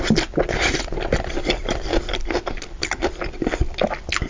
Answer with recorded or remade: recorded